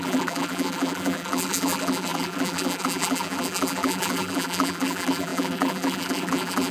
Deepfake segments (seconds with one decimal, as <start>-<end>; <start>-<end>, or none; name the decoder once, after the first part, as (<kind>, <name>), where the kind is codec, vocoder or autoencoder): 0.0-6.7 (vocoder, BigVGAN v2)